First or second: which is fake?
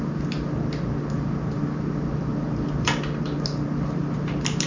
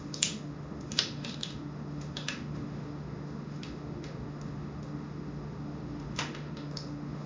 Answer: second